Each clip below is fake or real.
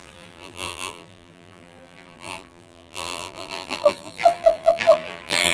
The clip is fake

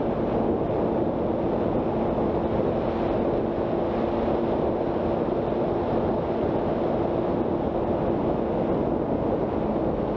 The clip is real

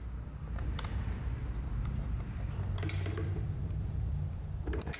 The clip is fake